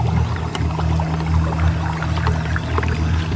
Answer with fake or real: real